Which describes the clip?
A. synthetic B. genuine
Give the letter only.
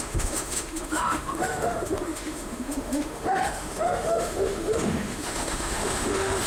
A